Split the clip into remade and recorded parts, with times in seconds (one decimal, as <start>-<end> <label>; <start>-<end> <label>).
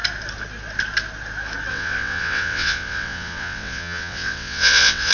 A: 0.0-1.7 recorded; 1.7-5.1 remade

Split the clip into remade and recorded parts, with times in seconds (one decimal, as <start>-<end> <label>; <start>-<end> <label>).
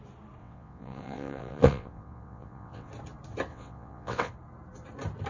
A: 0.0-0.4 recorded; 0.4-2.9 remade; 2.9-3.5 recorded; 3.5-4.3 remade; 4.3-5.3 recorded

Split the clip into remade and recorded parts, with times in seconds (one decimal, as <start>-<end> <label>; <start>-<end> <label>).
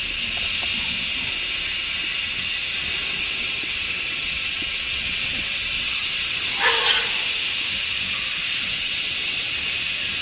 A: 0.0-3.0 recorded; 3.0-6.6 remade; 6.6-8.7 recorded; 8.7-9.5 remade; 9.5-10.2 recorded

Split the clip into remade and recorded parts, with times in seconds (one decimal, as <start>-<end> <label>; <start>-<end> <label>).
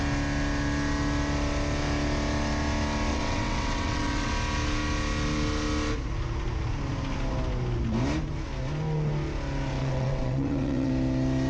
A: 0.0-3.1 recorded; 3.1-4.3 remade; 4.3-9.8 recorded; 9.8-10.9 remade; 10.9-11.5 recorded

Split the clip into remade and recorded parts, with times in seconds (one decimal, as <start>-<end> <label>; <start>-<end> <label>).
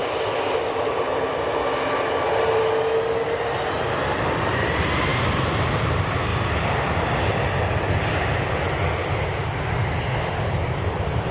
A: 0.0-11.3 recorded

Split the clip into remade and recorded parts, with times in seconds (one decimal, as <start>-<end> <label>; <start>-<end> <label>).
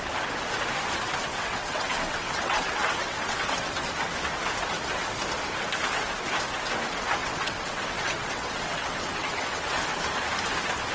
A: 0.0-1.3 recorded; 1.3-3.9 remade; 3.9-7.2 recorded; 7.2-9.8 remade; 9.8-10.9 recorded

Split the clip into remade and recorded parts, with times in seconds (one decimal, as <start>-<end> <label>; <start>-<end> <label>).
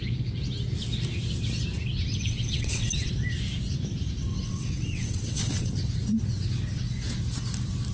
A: 0.0-2.1 recorded; 2.1-3.1 remade; 3.1-4.3 recorded; 4.3-5.7 remade; 5.7-7.9 recorded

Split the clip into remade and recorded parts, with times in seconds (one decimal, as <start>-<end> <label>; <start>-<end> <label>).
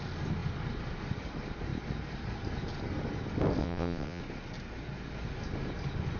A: 0.0-3.6 recorded; 3.6-4.2 remade; 4.2-6.2 recorded